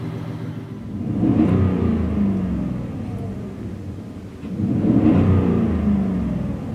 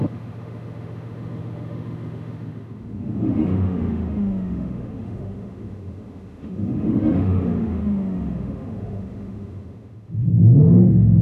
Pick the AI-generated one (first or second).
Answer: second